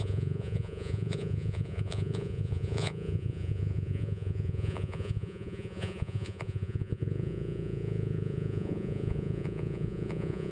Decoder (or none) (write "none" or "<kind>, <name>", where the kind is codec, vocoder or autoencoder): vocoder, Vocos